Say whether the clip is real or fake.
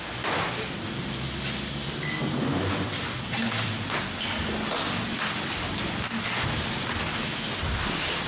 real